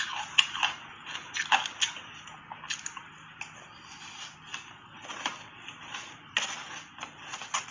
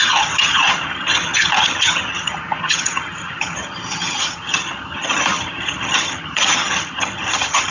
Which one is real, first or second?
first